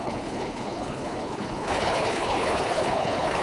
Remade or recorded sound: remade